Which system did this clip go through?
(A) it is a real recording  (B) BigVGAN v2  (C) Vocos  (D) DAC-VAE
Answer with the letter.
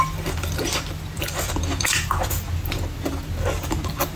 A